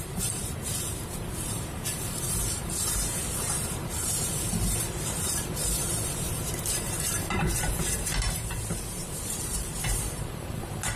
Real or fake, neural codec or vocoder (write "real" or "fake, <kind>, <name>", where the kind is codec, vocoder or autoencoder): fake, vocoder, BigVGAN v2